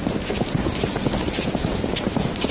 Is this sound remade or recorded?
recorded